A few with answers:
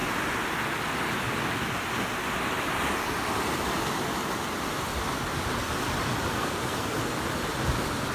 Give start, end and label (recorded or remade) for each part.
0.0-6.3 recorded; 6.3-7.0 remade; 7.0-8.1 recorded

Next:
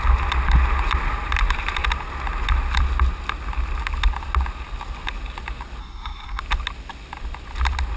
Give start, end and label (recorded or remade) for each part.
0.0-5.8 recorded; 5.8-6.4 remade; 6.4-8.0 recorded

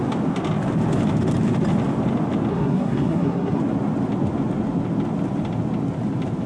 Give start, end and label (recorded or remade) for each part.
0.0-2.5 recorded; 2.5-3.6 remade; 3.6-6.5 recorded

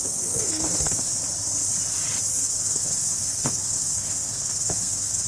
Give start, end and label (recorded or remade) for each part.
0.0-1.2 remade; 1.2-2.3 recorded; 2.3-5.3 remade

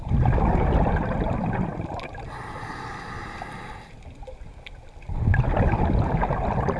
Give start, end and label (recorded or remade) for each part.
0.0-6.8 recorded

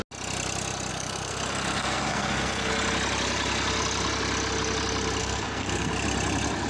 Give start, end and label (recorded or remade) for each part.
0.0-0.9 recorded; 0.9-2.7 remade; 2.7-5.2 recorded; 5.2-5.9 remade; 5.9-6.7 recorded